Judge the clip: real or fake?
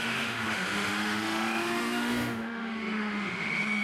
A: fake